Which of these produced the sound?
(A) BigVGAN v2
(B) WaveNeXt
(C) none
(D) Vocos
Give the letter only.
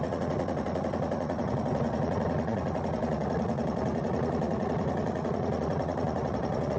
D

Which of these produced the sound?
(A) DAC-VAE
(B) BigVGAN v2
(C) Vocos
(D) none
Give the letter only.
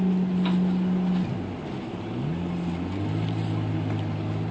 D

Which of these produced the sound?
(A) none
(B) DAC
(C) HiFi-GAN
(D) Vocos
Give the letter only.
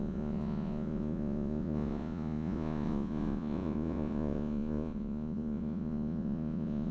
D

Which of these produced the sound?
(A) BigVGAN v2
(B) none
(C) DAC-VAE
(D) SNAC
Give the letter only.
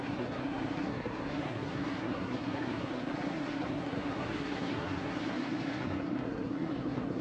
D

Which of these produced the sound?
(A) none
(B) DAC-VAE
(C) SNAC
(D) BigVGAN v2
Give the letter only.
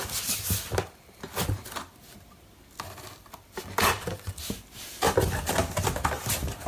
A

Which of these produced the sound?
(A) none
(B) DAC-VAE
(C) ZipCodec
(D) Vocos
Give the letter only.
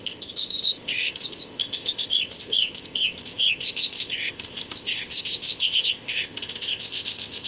C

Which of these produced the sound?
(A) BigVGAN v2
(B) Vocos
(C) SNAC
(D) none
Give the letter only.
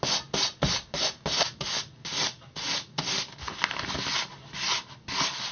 D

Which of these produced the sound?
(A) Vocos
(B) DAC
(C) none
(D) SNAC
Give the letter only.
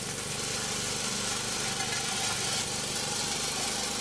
C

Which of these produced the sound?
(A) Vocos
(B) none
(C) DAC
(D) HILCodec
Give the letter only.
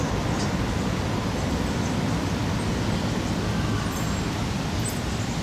B